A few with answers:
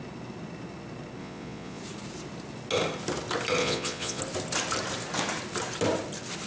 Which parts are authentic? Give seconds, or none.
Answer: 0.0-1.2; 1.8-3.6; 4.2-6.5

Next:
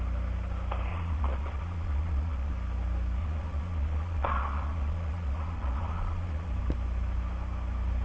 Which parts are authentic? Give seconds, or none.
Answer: 0.0-0.9; 2.5-3.2; 6.5-8.0

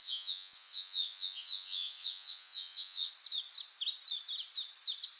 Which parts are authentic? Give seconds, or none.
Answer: 3.1-5.2

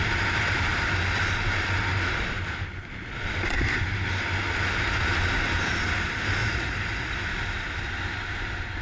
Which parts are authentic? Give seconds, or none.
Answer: 0.0-6.4; 7.1-8.8

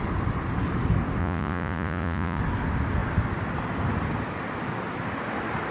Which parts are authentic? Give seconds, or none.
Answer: 0.0-1.2; 2.4-5.7

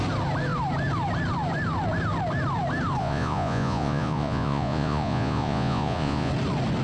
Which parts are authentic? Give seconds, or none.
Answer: 0.0-3.0; 6.3-6.8

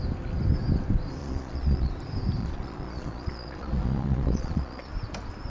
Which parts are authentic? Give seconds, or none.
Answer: 0.0-1.2; 1.9-2.4; 4.9-5.5

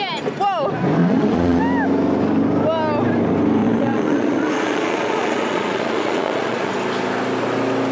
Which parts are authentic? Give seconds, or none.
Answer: 0.0-1.0; 1.6-3.6; 6.7-7.9